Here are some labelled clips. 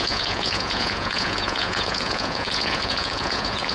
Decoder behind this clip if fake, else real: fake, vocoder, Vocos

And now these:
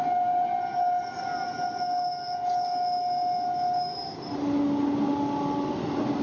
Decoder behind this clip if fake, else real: real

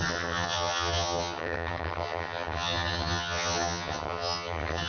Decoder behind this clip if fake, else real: fake, vocoder, HiFi-GAN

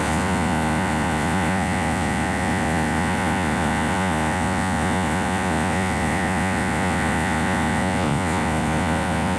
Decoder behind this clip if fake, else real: fake, vocoder, Vocos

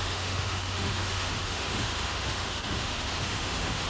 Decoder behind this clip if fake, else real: fake, autoencoder, DAC-VAE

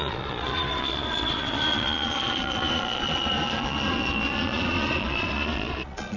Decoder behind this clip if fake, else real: fake, vocoder, Vocos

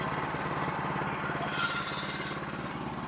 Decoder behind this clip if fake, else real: real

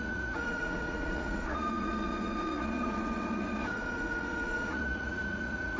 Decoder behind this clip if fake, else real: fake, vocoder, Vocos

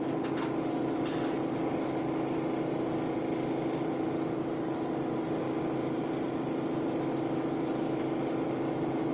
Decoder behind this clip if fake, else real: real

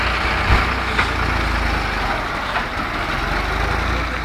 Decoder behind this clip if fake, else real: real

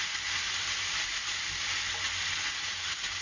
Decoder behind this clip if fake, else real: real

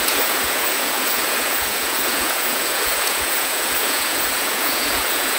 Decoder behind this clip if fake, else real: fake, vocoder, Vocos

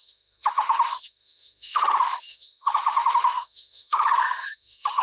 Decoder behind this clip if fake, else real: fake, autoencoder, DAC-VAE